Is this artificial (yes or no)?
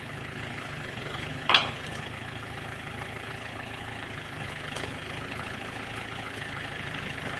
yes